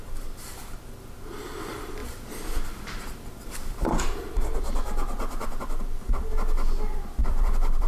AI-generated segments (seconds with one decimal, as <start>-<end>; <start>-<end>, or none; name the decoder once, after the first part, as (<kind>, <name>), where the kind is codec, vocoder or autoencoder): 2.0-3.9 (vocoder, BigVGAN v2); 7.2-7.9